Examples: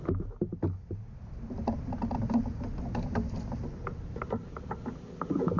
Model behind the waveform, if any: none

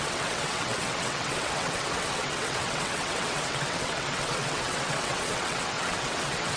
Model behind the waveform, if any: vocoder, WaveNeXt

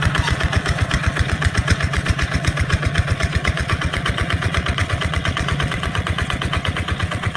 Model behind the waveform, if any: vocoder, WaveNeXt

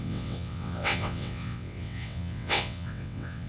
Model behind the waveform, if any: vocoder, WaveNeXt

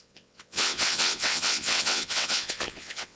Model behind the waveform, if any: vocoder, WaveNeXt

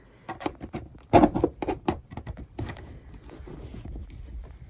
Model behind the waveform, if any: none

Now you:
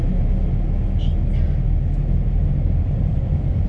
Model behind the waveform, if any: none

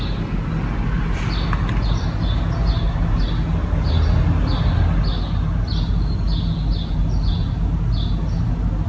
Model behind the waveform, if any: none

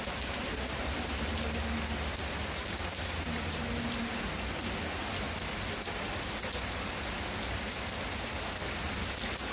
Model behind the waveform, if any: none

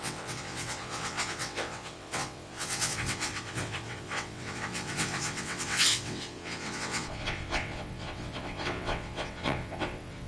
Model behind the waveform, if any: vocoder, WaveNeXt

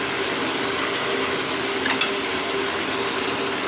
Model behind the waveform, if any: none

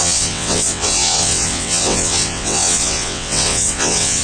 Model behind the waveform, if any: vocoder, WaveNeXt